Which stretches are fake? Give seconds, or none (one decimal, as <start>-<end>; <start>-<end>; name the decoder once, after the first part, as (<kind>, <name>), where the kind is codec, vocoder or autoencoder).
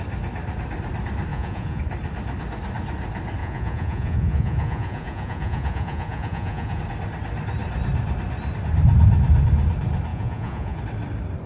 1.3-1.8 (vocoder, Vocos); 3.4-6.8; 10.1-10.8